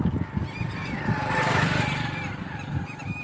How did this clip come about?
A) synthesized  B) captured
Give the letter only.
B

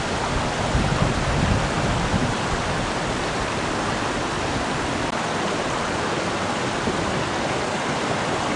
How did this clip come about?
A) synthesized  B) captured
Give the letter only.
B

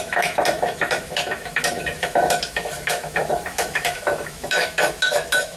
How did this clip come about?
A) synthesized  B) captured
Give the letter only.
A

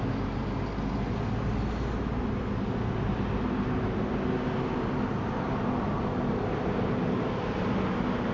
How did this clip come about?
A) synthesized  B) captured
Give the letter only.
B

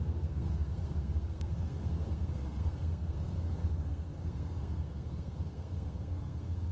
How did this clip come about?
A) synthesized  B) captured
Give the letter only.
A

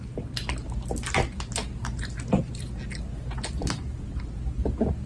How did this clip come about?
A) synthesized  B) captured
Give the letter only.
B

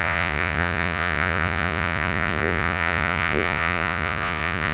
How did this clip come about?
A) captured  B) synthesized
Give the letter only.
B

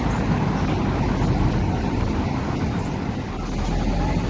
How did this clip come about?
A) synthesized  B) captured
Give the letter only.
B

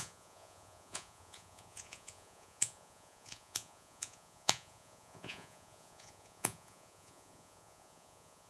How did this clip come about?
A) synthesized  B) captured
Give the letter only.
A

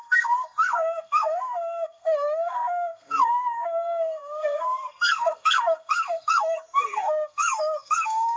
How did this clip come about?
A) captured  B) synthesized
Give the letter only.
B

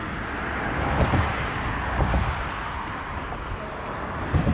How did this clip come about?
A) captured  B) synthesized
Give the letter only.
A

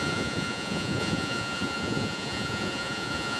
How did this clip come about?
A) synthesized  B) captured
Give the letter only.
A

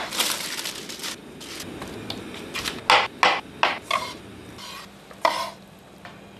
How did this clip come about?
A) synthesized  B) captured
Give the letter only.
B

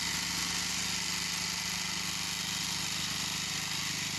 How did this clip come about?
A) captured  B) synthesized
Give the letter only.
A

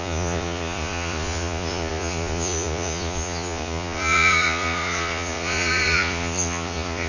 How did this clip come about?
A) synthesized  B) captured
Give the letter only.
A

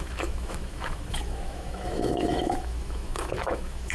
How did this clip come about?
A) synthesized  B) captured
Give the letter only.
A